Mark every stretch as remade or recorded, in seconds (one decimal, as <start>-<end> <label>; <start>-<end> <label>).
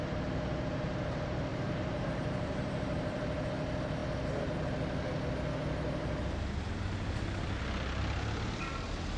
0.0-1.5 recorded; 1.5-3.5 remade; 3.5-9.2 recorded